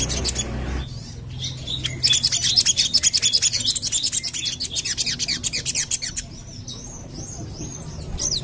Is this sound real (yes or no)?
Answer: yes